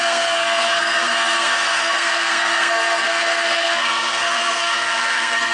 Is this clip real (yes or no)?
no